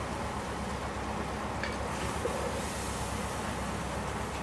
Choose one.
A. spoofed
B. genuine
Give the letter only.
B